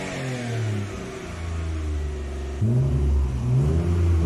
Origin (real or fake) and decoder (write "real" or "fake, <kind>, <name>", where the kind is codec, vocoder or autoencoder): real